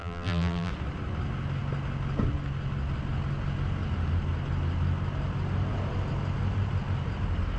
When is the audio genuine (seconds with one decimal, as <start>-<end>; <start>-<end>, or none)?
0.7-7.6